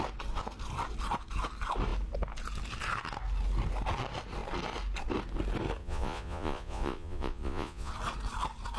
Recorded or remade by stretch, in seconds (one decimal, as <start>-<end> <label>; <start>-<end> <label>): 0.0-5.8 recorded; 5.8-7.9 remade; 7.9-8.8 recorded